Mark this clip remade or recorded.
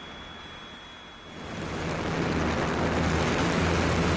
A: recorded